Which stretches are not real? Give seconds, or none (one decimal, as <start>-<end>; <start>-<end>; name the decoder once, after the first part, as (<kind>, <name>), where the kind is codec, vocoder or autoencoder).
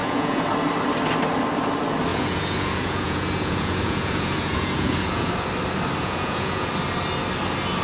0.0-0.5 (vocoder, Vocos); 2.1-5.3; 6.0-6.7